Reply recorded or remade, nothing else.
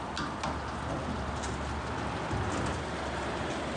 recorded